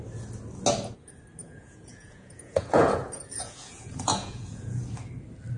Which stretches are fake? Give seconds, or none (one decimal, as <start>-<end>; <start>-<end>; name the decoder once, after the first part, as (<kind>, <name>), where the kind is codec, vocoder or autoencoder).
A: 1.4-4.8 (vocoder, Vocos)